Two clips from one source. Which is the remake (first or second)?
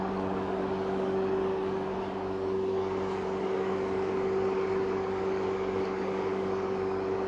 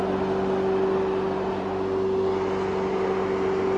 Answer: first